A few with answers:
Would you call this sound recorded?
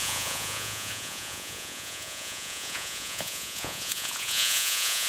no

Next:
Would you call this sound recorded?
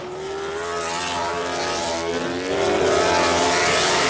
yes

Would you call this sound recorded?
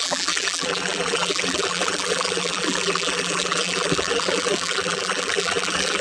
no